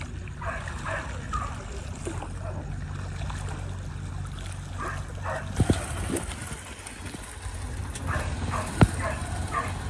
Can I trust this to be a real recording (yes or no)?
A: yes